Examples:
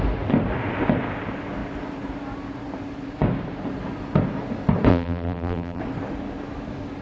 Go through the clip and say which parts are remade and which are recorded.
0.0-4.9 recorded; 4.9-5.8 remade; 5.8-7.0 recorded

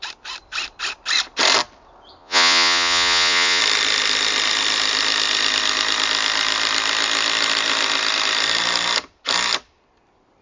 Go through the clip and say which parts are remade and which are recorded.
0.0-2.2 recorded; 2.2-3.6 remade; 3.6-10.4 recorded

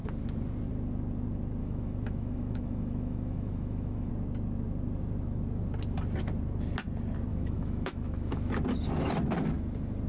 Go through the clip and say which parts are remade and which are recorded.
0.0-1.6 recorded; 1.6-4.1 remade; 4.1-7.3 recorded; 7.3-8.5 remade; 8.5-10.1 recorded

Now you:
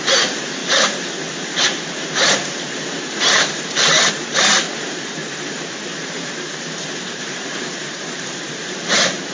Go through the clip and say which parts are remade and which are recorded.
0.0-9.3 remade

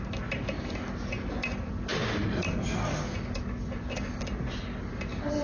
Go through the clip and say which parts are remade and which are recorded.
0.0-5.4 recorded

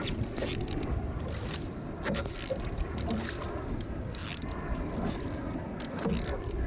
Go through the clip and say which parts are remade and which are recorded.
0.0-6.7 recorded

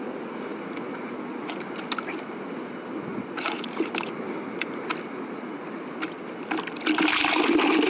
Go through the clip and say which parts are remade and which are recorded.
0.0-0.9 recorded; 0.9-1.6 remade; 1.6-3.1 recorded; 3.1-3.9 remade; 3.9-5.1 recorded; 5.1-5.6 remade; 5.6-7.9 recorded